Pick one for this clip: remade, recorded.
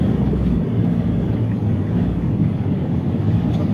remade